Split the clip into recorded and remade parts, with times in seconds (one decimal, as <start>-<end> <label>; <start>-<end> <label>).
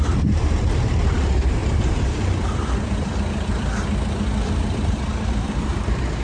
0.0-6.2 remade